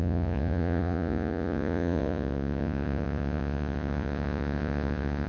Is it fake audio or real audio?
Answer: fake